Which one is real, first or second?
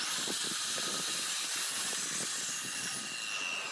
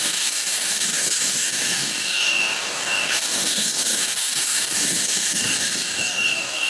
first